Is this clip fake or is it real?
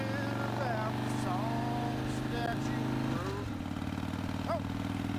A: real